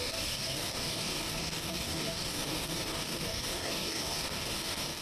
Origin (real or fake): fake